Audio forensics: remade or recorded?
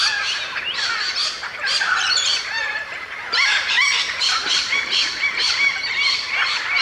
remade